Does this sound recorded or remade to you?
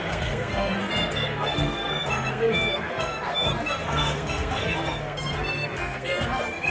remade